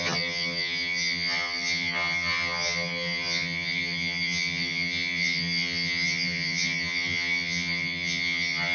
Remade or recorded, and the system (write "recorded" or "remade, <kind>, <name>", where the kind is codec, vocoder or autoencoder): remade, vocoder, HiFi-GAN